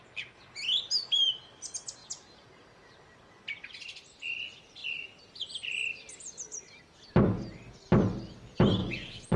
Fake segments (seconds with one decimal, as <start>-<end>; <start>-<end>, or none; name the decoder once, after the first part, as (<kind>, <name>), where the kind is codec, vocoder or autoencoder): 8.8-9.4 (vocoder, Vocos)